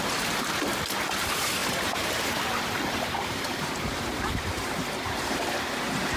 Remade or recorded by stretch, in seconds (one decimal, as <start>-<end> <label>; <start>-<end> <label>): 0.0-0.7 remade; 0.7-1.2 recorded; 1.2-6.2 remade